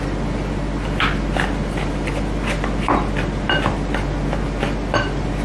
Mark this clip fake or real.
real